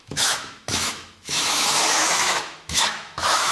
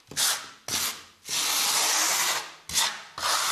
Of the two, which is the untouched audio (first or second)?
second